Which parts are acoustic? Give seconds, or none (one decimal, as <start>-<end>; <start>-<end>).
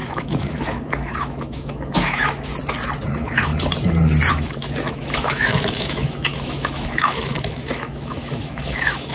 2.5-3.1; 3.5-4.3